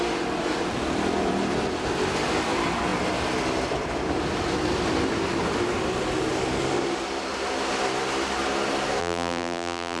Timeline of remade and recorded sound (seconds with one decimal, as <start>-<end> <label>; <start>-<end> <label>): 0.0-9.0 recorded; 9.0-10.0 remade